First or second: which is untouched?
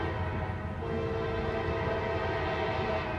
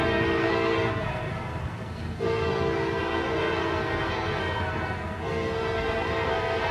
first